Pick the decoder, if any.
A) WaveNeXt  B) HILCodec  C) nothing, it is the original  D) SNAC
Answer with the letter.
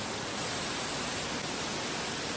C